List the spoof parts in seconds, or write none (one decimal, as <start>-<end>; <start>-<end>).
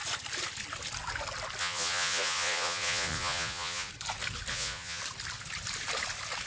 1.6-3.9; 4.5-5.0